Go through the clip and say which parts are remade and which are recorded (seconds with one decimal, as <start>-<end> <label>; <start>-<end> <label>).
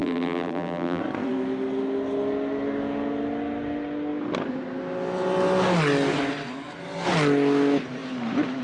0.0-1.0 remade; 1.0-8.6 recorded